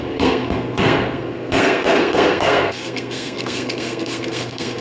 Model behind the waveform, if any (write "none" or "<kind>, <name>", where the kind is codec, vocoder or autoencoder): codec, SNAC